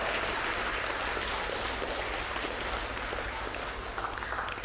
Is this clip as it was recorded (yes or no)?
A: yes